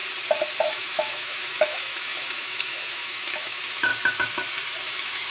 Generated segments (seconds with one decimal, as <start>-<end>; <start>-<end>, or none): 0.7-3.9; 4.8-5.3